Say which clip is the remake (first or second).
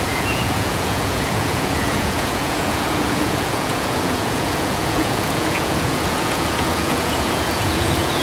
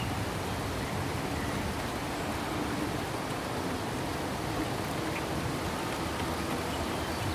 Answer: first